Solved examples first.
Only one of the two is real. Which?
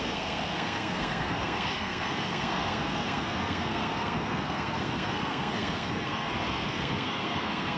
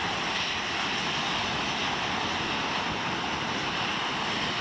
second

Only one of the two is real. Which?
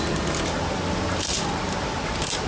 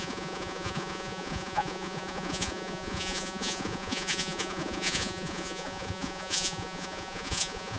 first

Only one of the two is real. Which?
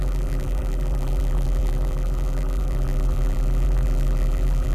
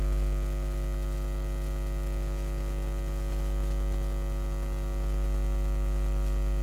second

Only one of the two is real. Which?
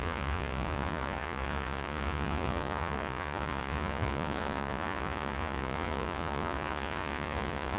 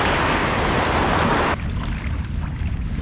second